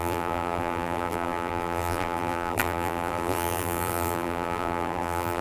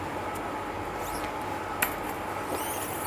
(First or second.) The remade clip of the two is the first